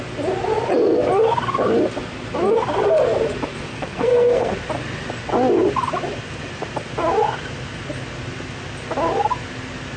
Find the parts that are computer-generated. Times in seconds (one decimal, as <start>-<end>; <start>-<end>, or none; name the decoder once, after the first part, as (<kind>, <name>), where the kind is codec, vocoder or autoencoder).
3.7-4.5 (codec, SNAC)